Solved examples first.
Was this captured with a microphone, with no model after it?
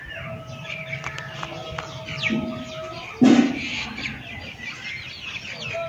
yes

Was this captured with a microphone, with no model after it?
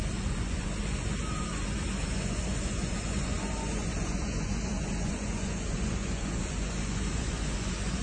no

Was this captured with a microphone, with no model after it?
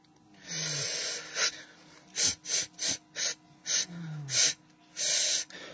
yes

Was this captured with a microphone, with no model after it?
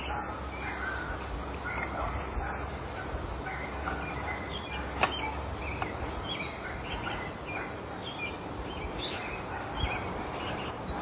yes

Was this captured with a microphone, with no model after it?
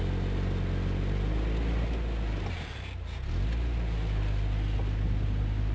yes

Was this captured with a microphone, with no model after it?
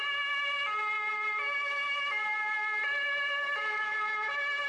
yes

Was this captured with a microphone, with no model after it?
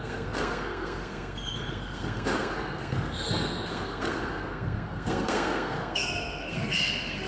no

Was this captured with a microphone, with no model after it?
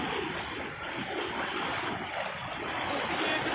yes